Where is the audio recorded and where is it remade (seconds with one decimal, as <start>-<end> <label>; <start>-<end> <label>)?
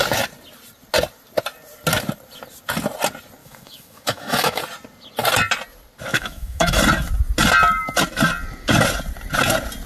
0.0-3.4 recorded; 3.4-4.6 remade; 4.6-6.1 recorded; 6.1-6.8 remade; 6.8-9.9 recorded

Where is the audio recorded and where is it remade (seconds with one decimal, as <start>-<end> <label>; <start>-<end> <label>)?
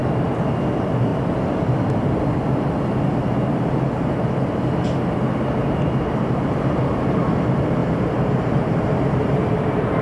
0.0-0.7 recorded; 0.7-1.1 remade; 1.1-5.6 recorded; 5.6-10.0 remade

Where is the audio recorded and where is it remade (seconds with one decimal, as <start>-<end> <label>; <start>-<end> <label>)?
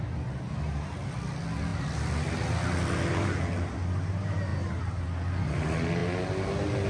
0.0-6.9 recorded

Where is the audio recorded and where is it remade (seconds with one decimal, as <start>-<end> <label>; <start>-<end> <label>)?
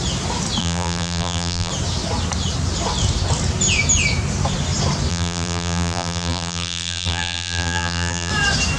0.0-0.6 recorded; 0.6-1.7 remade; 1.7-5.1 recorded; 5.1-8.3 remade; 8.3-8.8 recorded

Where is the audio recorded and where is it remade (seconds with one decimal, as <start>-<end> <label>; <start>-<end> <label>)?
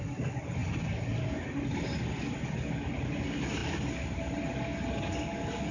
0.0-5.7 recorded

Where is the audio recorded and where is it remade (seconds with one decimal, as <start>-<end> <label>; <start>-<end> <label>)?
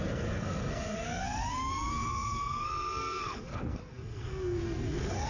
0.0-5.3 remade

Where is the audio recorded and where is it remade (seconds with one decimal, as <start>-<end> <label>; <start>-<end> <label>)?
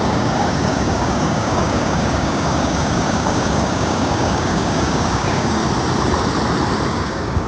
0.0-5.6 remade; 5.6-6.9 recorded; 6.9-7.5 remade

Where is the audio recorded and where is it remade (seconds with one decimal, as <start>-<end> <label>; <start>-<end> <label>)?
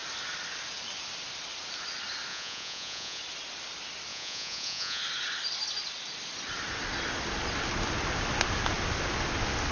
0.0-2.3 recorded; 2.3-3.2 remade; 3.2-4.1 recorded; 4.1-5.0 remade; 5.0-9.7 recorded